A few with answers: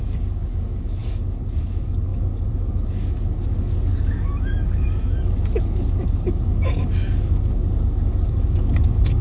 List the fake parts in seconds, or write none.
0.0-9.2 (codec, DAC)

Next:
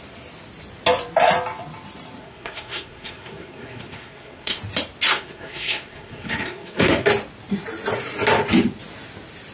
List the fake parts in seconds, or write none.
2.2-4.6 (codec, SNAC); 5.1-7.1

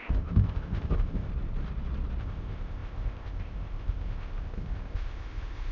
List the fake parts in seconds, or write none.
0.0-1.3 (codec, ZipCodec); 2.2-5.7

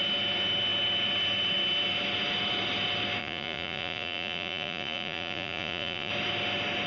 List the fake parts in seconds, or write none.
3.2-6.1 (vocoder, Vocos)

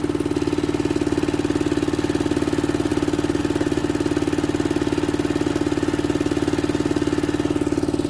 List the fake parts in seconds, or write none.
none

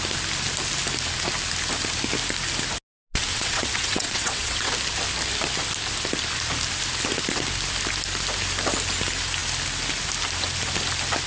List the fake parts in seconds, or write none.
3.3-4.7 (vocoder, WaveNeXt)

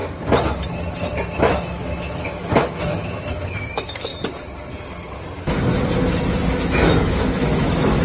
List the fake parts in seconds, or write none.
1.4-4.1 (autoencoder, DAC-VAE); 6.5-8.0